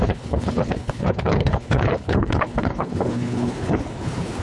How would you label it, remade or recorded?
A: remade